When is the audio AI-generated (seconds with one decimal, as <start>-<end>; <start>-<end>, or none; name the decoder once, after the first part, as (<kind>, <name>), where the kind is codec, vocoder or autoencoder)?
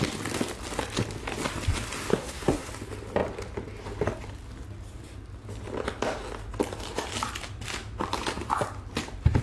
2.1-2.7 (codec, SNAC)